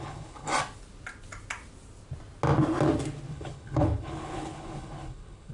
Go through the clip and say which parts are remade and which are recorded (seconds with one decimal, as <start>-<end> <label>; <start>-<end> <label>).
0.0-0.5 remade; 0.5-3.3 recorded; 3.3-5.5 remade